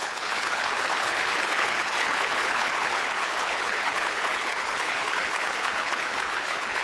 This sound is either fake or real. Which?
fake